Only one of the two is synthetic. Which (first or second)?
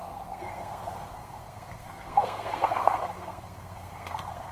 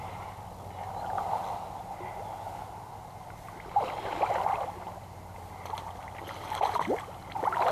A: first